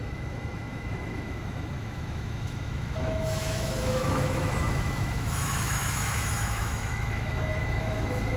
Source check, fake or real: fake